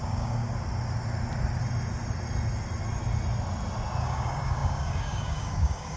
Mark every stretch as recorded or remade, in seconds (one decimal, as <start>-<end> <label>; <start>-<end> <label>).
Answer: 0.0-0.4 remade; 0.4-4.0 recorded; 4.0-6.0 remade